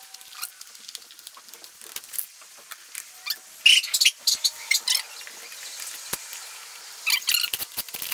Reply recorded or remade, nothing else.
recorded